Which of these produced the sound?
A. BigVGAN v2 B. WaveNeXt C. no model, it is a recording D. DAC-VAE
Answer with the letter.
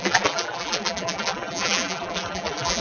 A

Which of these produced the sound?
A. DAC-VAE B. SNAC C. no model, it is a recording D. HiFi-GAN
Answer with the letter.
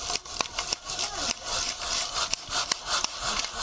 C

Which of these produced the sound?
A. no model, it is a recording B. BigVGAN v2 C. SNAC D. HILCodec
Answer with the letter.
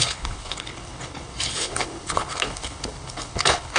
D